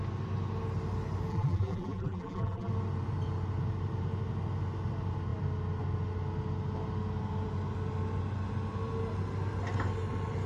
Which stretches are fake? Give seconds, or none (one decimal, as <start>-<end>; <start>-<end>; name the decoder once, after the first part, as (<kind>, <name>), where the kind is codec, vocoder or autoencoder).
1.3-2.7 (vocoder, BigVGAN v2)